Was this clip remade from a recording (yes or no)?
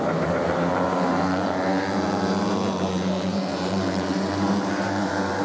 yes